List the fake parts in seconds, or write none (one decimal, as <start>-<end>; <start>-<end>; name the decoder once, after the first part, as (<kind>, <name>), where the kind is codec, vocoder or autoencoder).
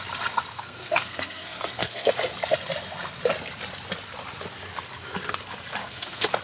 0.5-2.1 (codec, SNAC); 5.8-6.4